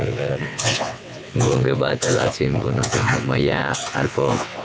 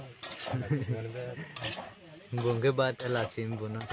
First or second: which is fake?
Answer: first